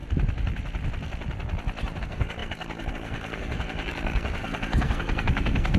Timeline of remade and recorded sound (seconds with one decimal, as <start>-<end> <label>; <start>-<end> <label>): 0.0-2.0 recorded; 2.0-5.8 remade